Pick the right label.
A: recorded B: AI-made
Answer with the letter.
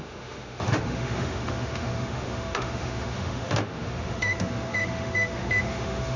B